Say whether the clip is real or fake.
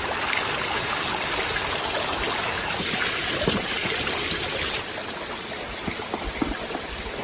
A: real